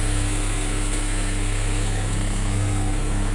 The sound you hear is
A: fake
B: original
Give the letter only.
A